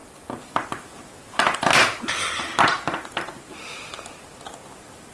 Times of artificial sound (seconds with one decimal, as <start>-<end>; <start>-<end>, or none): none